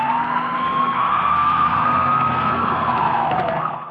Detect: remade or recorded remade